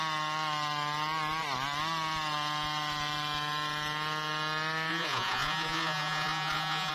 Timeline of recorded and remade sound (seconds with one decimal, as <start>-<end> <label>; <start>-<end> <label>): 0.0-4.9 recorded; 4.9-6.9 remade